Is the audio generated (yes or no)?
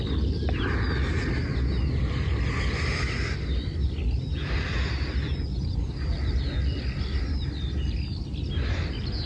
no